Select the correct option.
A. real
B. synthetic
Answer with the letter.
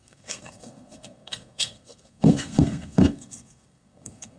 B